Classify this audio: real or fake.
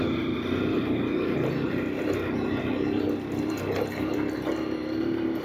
real